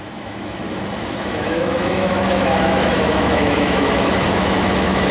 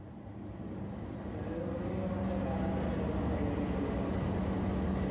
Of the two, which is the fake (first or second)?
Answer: first